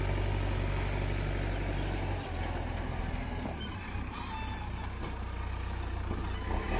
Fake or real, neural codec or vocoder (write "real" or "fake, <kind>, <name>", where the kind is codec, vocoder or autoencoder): real